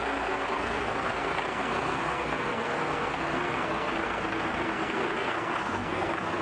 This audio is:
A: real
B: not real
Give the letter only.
B